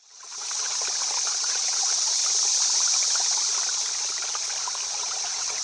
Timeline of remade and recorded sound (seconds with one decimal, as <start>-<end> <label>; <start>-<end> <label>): 0.0-0.8 remade; 0.8-1.3 recorded; 1.3-2.2 remade; 2.2-4.9 recorded; 4.9-5.6 remade